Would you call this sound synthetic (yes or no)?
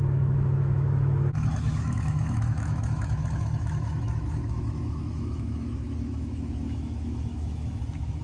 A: yes